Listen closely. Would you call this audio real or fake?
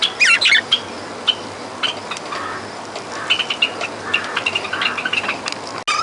real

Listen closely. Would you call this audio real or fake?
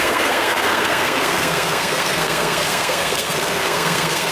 fake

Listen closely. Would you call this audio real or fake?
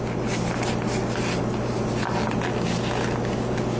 real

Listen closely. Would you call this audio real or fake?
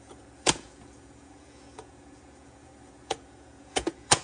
fake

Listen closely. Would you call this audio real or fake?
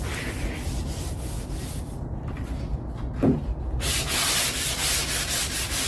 real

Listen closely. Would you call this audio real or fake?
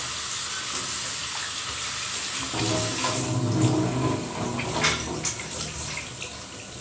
real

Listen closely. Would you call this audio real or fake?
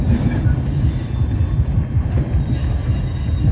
real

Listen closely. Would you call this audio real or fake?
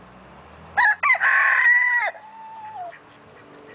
real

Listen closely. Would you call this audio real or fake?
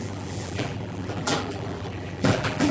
fake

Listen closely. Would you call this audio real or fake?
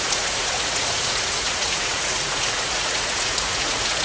fake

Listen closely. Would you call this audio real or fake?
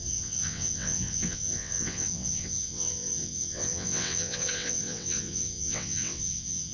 fake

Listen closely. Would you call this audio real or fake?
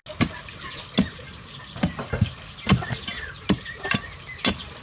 real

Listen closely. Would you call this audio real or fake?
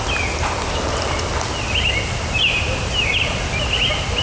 real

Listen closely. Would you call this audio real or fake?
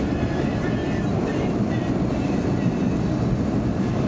real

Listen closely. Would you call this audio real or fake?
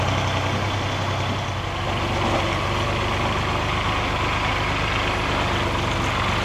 real